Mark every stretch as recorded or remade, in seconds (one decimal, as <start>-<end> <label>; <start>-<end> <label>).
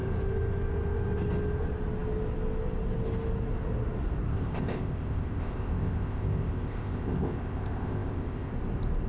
0.0-4.3 recorded; 4.3-8.5 remade; 8.5-9.1 recorded